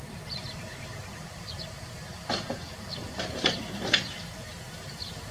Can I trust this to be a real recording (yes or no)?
no